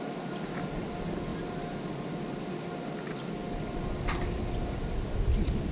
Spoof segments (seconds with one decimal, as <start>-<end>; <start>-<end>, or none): none